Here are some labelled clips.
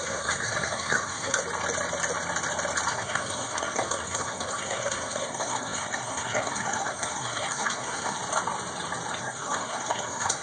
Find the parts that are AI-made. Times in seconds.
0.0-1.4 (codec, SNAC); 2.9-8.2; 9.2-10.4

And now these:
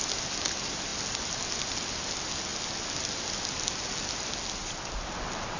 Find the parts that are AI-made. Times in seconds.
none

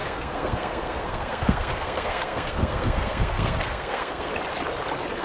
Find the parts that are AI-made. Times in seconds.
0.0-4.3 (codec, SNAC)

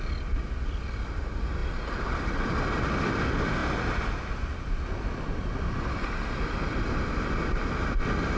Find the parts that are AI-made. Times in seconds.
none

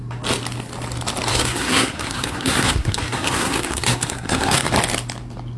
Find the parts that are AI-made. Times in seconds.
1.3-4.7 (codec, SNAC)

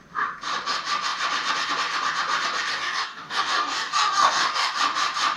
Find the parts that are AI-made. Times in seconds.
2.7-4.8 (codec, DAC)

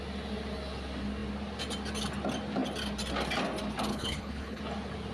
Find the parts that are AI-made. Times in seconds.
3.9-4.6 (codec, HILCodec)